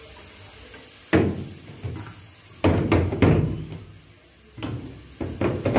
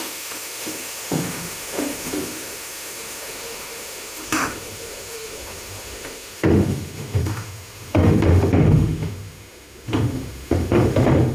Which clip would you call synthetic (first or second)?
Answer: second